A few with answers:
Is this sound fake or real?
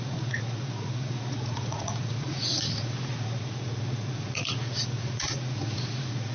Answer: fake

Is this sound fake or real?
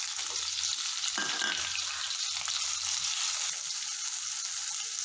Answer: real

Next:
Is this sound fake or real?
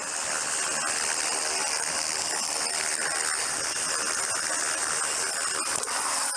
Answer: real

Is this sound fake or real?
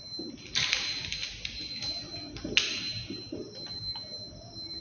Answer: real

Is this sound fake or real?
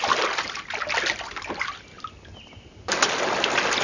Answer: real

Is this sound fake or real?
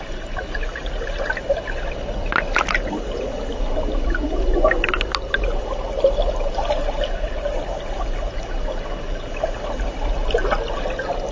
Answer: real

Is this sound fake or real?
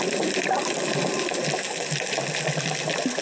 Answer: real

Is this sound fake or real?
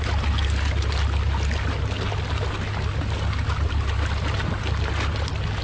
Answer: real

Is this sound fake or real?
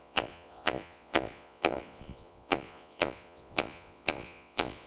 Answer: fake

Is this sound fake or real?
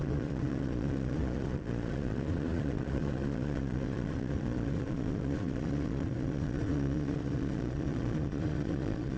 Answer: fake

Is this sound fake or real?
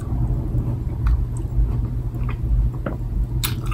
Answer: real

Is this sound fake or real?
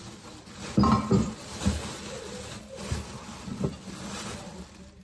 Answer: real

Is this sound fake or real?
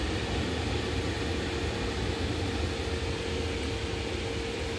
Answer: real